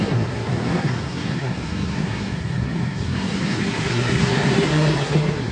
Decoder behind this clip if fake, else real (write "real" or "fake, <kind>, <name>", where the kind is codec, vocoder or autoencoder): fake, codec, SNAC